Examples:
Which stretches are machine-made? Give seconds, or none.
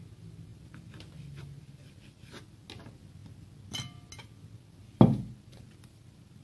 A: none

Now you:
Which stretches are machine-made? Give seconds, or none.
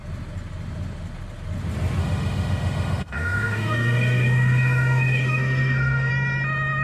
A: 2.0-6.1 (autoencoder, DAC-VAE)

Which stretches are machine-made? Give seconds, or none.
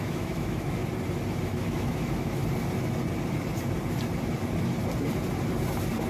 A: 0.0-0.8 (autoencoder, DAC-VAE); 1.4-2.4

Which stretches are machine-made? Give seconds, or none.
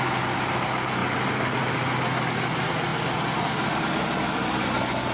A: none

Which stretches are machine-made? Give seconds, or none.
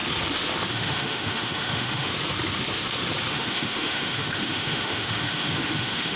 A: 0.7-2.1 (autoencoder, DAC-VAE); 3.3-6.2